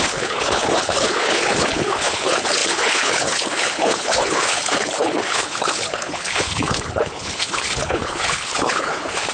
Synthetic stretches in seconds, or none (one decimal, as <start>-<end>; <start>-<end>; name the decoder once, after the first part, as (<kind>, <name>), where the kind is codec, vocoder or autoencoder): 0.0-9.3 (codec, HILCodec)